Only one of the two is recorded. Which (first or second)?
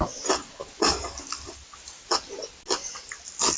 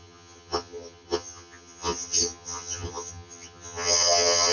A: first